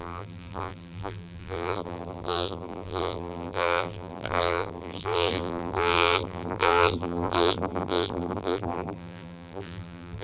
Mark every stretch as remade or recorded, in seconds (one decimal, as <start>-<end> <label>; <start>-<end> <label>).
0.0-10.2 remade